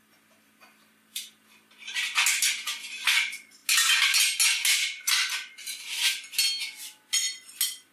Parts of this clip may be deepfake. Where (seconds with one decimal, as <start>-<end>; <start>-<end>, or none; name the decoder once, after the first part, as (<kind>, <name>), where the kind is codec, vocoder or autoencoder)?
none